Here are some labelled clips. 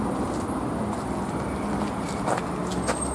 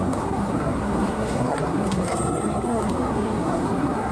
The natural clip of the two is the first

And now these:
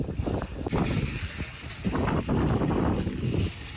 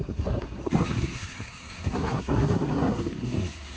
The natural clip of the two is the first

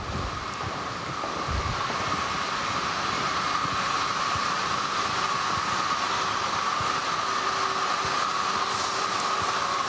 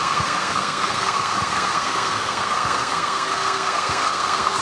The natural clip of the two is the first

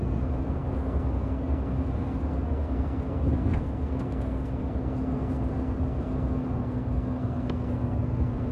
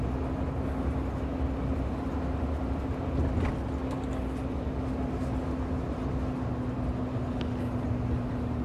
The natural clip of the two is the second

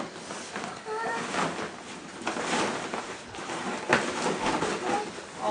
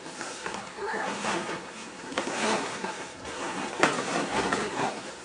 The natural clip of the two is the first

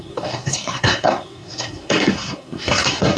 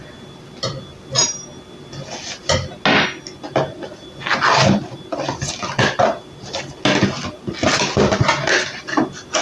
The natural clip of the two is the second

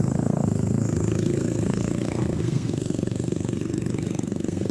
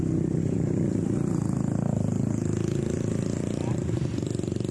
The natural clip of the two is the second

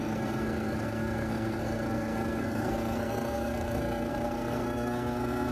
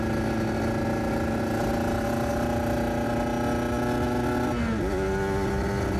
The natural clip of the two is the second